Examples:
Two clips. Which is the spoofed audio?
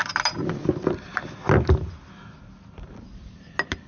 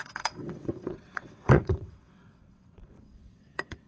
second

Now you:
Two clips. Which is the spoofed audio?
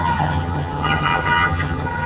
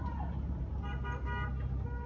first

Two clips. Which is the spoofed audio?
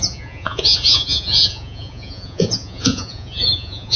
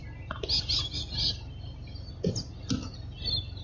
first